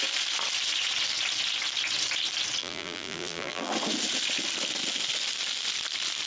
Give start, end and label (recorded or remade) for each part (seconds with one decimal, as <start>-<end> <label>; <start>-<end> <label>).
0.0-2.6 recorded; 2.6-3.7 remade; 3.7-6.3 recorded